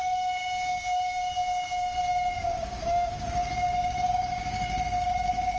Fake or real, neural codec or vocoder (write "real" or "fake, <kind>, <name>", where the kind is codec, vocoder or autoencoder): fake, codec, DAC